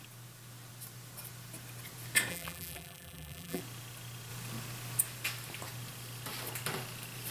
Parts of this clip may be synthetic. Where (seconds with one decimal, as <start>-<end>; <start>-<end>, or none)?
2.3-3.6